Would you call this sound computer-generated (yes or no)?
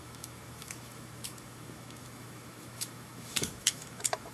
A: yes